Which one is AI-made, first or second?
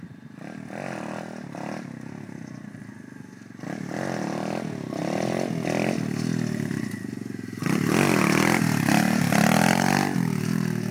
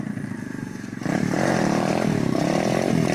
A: second